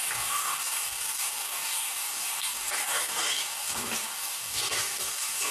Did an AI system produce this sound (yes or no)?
yes